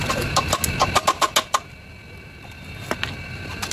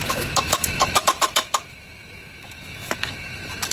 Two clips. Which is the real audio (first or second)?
first